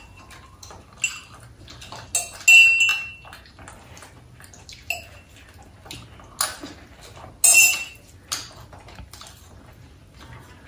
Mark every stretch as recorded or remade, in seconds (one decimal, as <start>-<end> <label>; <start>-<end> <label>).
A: 0.0-10.7 recorded